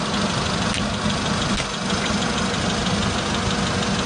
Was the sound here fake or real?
real